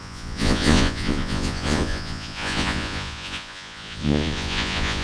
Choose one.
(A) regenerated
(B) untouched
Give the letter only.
A